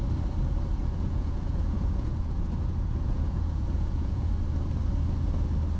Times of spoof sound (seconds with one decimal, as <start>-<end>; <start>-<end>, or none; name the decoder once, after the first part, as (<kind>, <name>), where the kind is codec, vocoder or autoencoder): 0.8-4.3 (vocoder, Vocos)